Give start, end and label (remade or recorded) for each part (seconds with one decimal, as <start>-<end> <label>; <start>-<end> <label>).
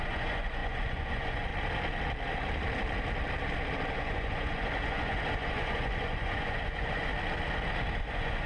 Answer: 0.0-1.5 remade; 1.5-3.9 recorded; 3.9-7.1 remade; 7.1-8.0 recorded; 8.0-8.5 remade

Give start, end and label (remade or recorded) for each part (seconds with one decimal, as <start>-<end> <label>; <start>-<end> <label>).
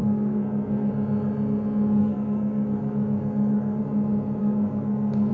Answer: 0.0-0.9 remade; 0.9-2.0 recorded; 2.0-3.8 remade; 3.8-4.4 recorded; 4.4-5.3 remade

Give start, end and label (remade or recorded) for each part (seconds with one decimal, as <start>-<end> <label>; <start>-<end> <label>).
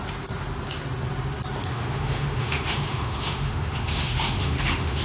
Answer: 0.0-1.7 recorded; 1.7-5.0 remade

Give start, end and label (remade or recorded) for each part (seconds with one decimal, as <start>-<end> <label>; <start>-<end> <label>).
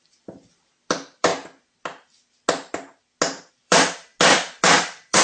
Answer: 0.0-1.3 remade; 1.3-3.5 recorded; 3.5-4.1 remade; 4.1-4.6 recorded; 4.6-5.2 remade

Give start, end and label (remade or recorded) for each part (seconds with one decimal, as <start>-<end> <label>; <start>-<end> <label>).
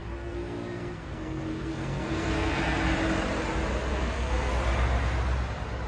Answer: 0.0-2.6 remade; 2.6-3.9 recorded; 3.9-4.5 remade; 4.5-5.9 recorded